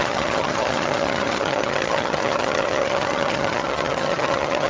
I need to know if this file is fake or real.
fake